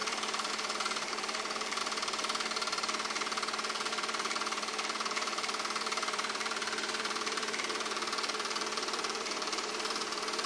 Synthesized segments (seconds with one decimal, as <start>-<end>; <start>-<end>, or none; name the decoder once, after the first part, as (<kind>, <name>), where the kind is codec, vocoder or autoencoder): 0.0-1.8 (vocoder, BigVGAN v2); 3.9-10.5